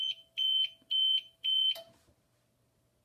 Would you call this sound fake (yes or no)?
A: no